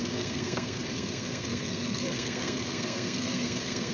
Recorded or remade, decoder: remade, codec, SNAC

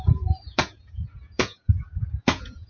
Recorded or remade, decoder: remade, vocoder, Vocos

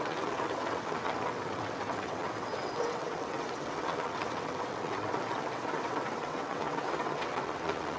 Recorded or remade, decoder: remade, vocoder, WaveNeXt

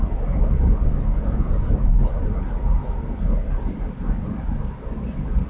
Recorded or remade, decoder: recorded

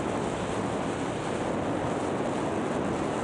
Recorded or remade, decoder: recorded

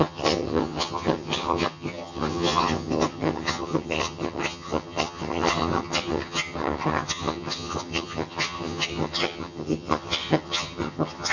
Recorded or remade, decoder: remade, vocoder, HiFi-GAN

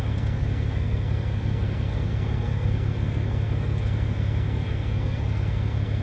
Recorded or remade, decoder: remade, codec, SNAC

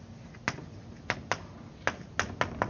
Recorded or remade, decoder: recorded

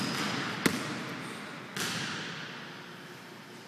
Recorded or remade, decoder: recorded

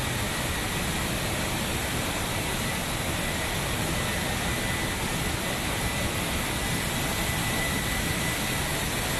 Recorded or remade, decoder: recorded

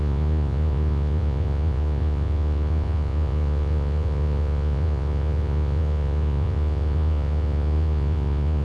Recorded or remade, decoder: remade, vocoder, Vocos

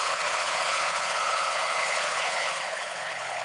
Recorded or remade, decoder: remade, codec, HILCodec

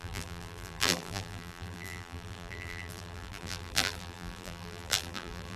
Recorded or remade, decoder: remade, vocoder, BigVGAN v2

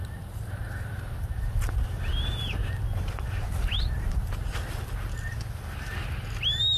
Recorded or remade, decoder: recorded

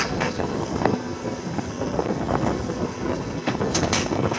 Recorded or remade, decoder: remade, codec, SNAC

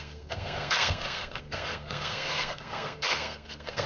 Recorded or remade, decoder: remade, codec, SNAC